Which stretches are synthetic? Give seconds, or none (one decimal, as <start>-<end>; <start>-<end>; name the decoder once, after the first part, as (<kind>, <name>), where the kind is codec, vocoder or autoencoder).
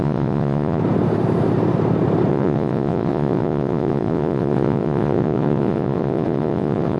0.0-0.8 (vocoder, Vocos); 2.3-7.0